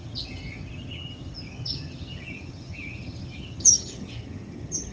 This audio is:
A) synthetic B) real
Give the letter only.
A